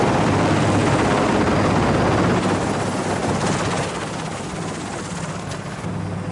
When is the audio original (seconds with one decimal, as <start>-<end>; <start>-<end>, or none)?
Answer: 0.0-6.3